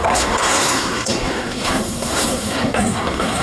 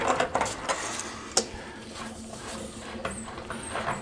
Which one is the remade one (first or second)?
first